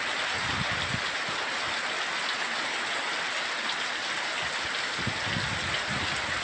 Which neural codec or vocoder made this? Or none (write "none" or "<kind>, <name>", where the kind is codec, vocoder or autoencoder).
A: none